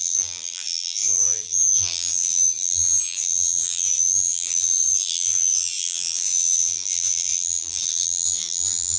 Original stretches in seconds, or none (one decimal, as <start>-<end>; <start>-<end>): none

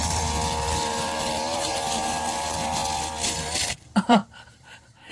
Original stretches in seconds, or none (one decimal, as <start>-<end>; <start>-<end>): 2.8-3.7

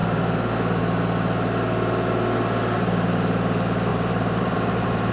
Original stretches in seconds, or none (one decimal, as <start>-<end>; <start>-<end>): 0.0-3.9

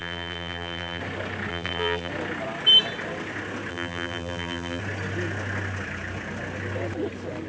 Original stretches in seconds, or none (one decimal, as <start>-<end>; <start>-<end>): 1.0-1.5; 2.1-3.7; 4.8-7.5

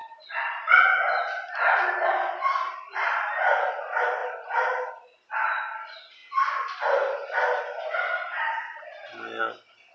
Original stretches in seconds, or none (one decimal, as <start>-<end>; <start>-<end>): 0.0-4.2; 4.9-9.9